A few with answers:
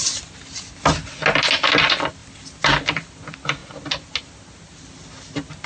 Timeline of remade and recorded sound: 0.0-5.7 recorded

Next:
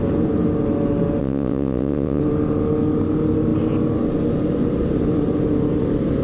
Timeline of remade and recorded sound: 0.0-1.2 recorded; 1.2-2.2 remade; 2.2-6.2 recorded

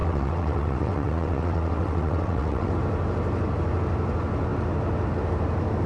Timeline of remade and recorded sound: 0.0-2.7 remade; 2.7-5.9 recorded